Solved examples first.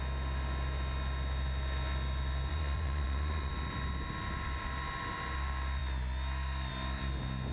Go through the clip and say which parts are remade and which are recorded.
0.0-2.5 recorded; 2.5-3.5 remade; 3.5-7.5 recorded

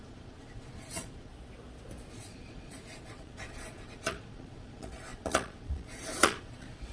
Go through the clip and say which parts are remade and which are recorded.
0.0-1.3 remade; 1.3-2.1 recorded; 2.1-6.9 remade

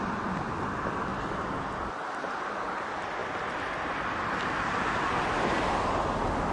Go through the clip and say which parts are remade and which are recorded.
0.0-6.5 recorded

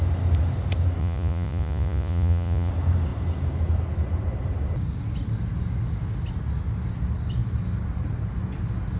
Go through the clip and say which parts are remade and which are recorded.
0.0-1.0 recorded; 1.0-2.7 remade; 2.7-9.0 recorded